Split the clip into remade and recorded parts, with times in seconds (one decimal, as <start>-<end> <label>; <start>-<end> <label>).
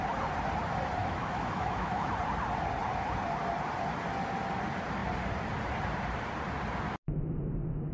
0.0-1.0 recorded; 1.0-2.1 remade; 2.1-7.9 recorded